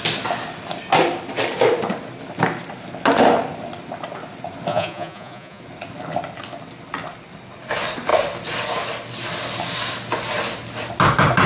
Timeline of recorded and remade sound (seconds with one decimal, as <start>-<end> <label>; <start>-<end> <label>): 0.0-4.7 recorded; 4.7-5.6 remade; 5.6-11.5 recorded